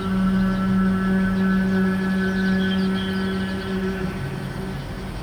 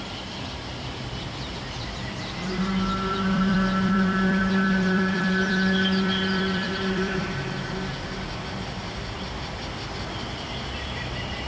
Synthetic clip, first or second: second